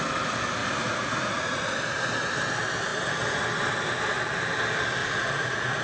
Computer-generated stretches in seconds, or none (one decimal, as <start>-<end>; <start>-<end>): 0.6-1.6; 5.0-5.8